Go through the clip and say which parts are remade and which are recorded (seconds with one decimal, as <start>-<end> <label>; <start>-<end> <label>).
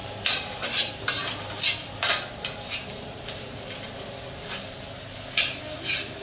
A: 0.0-6.2 recorded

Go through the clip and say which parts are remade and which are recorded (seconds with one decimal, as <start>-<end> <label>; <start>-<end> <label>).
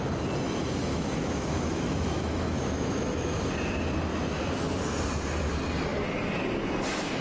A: 0.0-0.9 recorded; 0.9-3.5 remade; 3.5-7.2 recorded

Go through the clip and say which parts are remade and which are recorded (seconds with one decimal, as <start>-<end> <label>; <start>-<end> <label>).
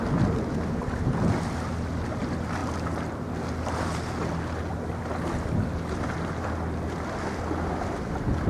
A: 0.0-8.5 recorded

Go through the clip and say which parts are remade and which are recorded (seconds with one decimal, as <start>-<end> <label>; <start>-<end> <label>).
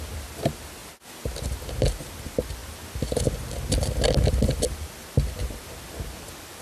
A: 0.0-6.6 recorded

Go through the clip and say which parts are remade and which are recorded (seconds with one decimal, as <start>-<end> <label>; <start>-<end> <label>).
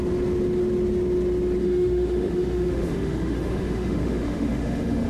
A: 0.0-1.6 recorded; 1.6-5.1 remade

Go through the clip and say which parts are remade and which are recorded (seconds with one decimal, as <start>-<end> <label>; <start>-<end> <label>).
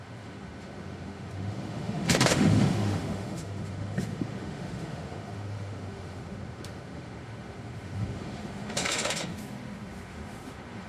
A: 0.0-10.9 remade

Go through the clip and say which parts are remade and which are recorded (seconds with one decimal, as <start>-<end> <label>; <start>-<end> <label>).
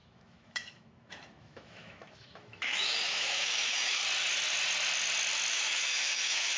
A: 0.0-4.0 remade; 4.0-5.5 recorded; 5.5-6.6 remade